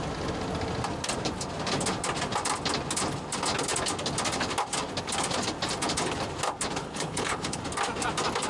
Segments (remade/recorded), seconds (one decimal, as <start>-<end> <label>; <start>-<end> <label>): 0.0-6.8 recorded; 6.8-7.6 remade; 7.6-8.5 recorded